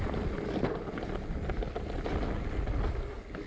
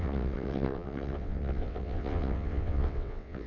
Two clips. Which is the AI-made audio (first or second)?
second